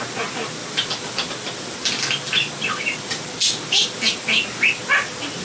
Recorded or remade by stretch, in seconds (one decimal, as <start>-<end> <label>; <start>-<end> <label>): 0.0-5.4 recorded